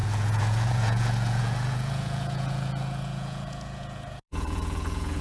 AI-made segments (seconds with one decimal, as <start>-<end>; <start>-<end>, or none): 0.0-5.2